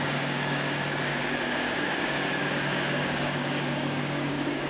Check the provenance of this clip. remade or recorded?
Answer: remade